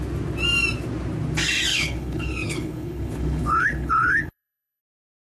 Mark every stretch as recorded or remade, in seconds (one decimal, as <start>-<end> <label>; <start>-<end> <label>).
0.0-1.7 recorded; 1.7-4.8 remade; 4.8-5.3 recorded